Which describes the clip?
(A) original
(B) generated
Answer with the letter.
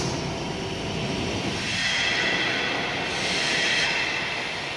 A